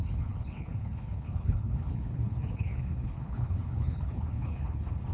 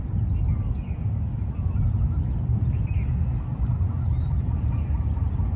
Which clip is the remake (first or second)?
first